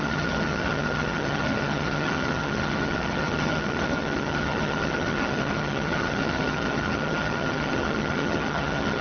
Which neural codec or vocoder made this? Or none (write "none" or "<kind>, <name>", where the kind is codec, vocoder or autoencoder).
vocoder, HiFi-GAN